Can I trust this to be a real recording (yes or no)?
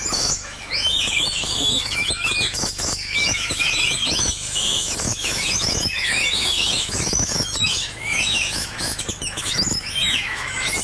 no